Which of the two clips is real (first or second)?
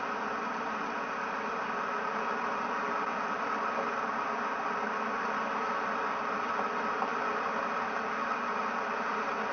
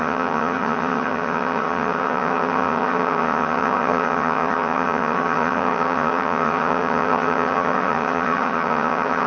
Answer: first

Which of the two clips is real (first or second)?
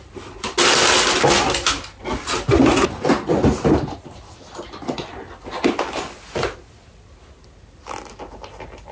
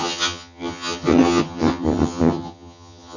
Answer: first